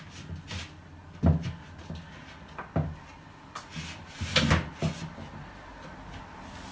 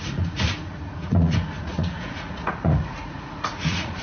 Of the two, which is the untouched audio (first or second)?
first